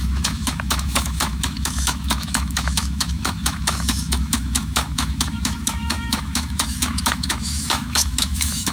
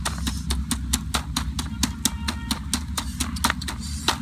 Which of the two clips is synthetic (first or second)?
first